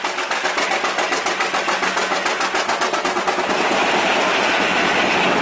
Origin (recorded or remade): recorded